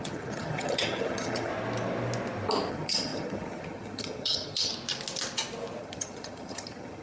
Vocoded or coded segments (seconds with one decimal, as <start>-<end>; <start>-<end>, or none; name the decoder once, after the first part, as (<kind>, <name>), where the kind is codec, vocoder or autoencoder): 0.0-1.5 (vocoder, HiFi-GAN); 2.7-4.7; 5.8-7.0